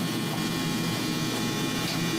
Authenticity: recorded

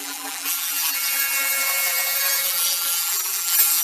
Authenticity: remade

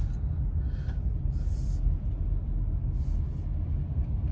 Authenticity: recorded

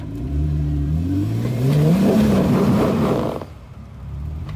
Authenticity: remade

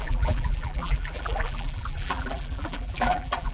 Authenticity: remade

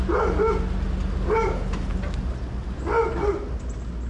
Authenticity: recorded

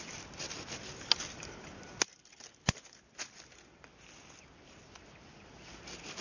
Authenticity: recorded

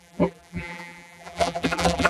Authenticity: remade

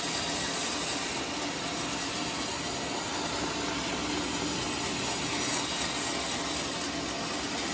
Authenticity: recorded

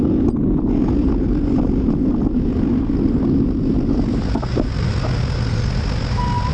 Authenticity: recorded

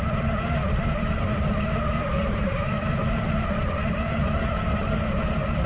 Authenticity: remade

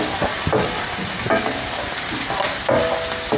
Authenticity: recorded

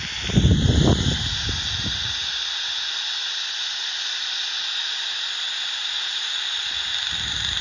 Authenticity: recorded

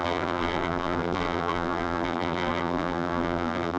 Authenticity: remade